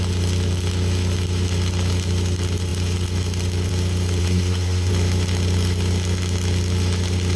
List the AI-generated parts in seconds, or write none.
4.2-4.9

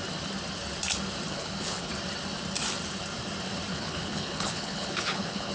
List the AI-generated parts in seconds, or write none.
1.3-1.9; 3.7-5.5

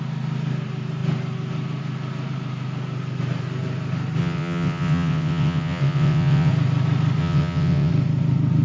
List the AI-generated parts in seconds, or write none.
4.2-6.5; 7.2-7.9

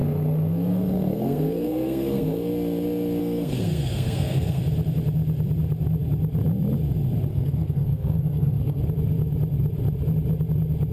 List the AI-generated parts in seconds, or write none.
0.0-2.5; 3.2-4.6; 7.3-8.8

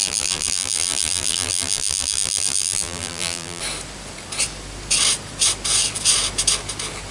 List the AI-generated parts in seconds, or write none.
0.0-3.6